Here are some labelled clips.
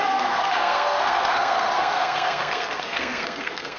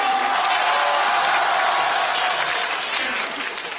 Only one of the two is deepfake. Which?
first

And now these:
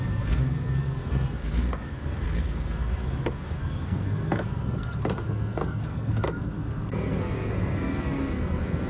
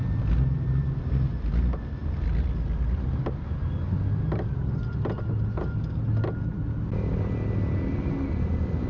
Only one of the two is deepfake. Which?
first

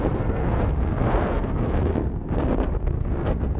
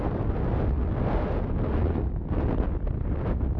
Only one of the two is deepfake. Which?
first